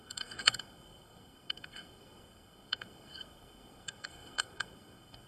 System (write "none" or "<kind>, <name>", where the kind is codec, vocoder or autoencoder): codec, SNAC